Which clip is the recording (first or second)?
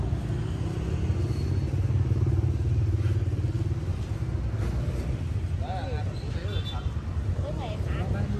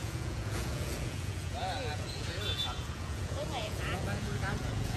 first